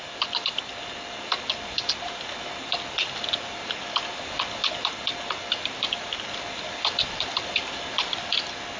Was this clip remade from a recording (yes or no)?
no